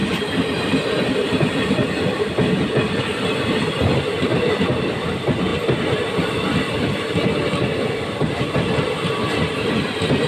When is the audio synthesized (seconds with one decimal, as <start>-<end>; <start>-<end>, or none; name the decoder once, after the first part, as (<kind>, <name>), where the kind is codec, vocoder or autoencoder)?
0.0-0.6 (vocoder, BigVGAN v2); 1.2-3.1; 4.3-4.9; 5.5-8.3